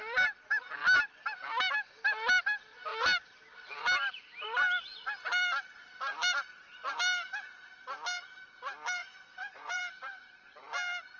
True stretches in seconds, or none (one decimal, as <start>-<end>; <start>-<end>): 0.0-9.0; 9.8-11.2